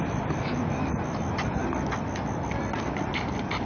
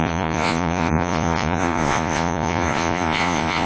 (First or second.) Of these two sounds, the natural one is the first